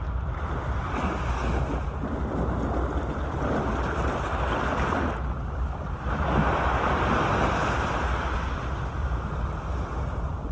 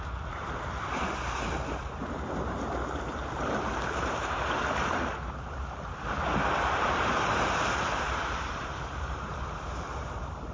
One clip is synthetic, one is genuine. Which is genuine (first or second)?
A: first